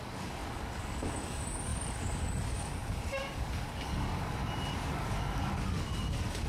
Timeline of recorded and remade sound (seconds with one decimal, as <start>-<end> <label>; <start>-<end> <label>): 0.0-4.4 remade; 4.4-4.9 recorded; 4.9-6.5 remade